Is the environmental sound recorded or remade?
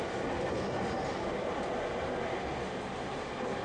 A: recorded